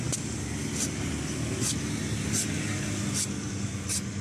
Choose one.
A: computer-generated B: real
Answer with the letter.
B